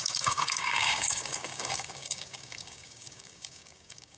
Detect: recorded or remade remade